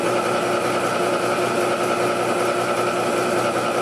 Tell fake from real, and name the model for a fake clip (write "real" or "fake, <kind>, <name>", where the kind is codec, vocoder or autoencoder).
real